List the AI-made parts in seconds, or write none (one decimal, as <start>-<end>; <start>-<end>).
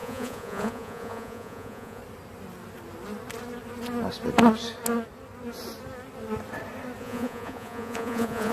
0.0-2.0; 7.0-8.5